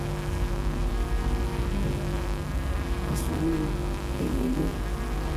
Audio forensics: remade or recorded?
remade